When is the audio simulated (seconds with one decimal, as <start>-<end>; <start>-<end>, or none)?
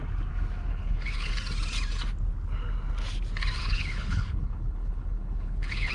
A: 0.7-1.3; 3.6-5.9